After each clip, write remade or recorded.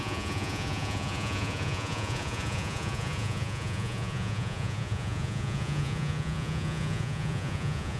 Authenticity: remade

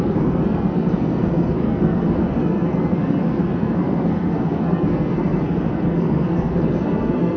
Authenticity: remade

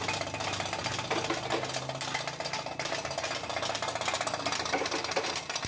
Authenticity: recorded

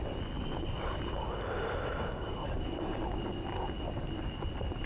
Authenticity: recorded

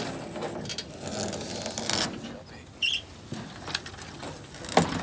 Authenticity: recorded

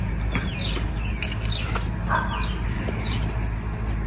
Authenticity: recorded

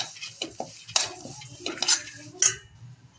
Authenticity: recorded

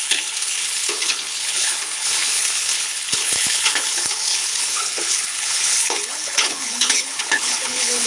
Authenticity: remade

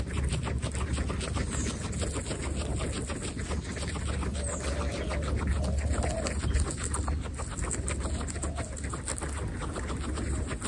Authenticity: recorded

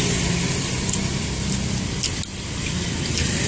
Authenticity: recorded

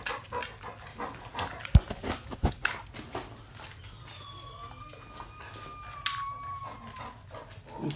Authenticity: recorded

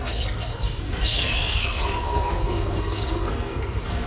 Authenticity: remade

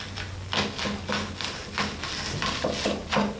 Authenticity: recorded